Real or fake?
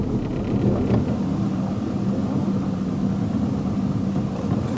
real